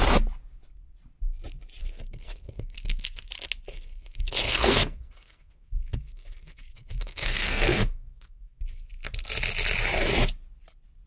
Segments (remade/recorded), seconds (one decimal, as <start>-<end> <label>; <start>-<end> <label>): 0.0-1.8 recorded; 1.8-3.3 remade; 3.3-3.7 recorded; 3.7-8.9 remade; 8.9-11.1 recorded